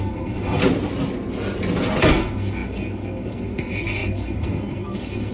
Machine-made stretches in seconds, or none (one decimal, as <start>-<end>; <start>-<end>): 0.0-0.6; 2.1-5.3